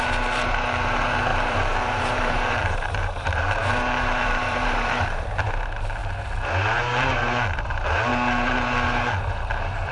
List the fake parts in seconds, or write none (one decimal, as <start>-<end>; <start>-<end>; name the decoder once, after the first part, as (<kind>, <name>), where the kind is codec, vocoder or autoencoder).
1.3-5.5 (vocoder, BigVGAN v2)